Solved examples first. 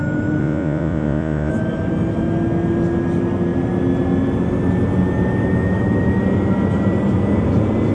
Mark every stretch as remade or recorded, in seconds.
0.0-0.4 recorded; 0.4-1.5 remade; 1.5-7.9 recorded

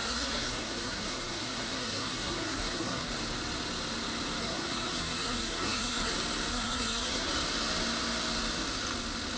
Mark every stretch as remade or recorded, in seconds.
0.0-3.1 remade; 3.1-4.4 recorded; 4.4-6.1 remade; 6.1-6.5 recorded; 6.5-7.3 remade; 7.3-9.4 recorded

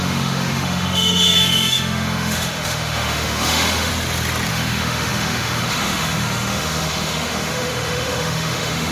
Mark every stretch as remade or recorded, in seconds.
0.0-3.9 remade; 3.9-4.5 recorded; 4.5-8.9 remade

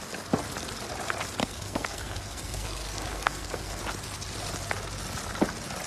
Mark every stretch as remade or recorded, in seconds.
0.0-1.4 recorded; 1.4-3.8 remade; 3.8-5.9 recorded

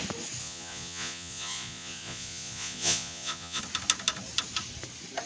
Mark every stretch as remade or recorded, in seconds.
0.0-0.4 recorded; 0.4-3.6 remade; 3.6-5.3 recorded